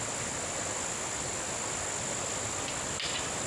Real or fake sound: real